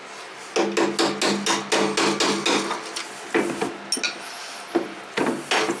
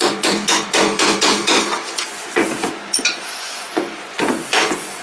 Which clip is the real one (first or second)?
first